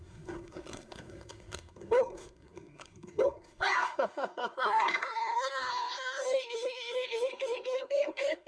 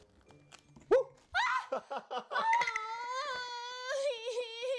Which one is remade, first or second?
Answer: first